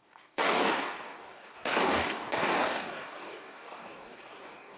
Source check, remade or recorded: remade